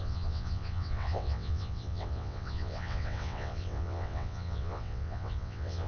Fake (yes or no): yes